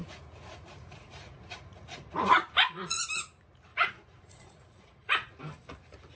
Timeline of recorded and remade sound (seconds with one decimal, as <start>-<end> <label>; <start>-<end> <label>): 0.0-3.0 remade; 3.0-3.7 recorded; 3.7-5.4 remade; 5.4-6.2 recorded